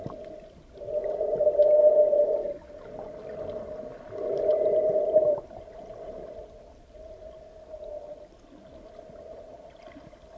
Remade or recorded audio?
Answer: recorded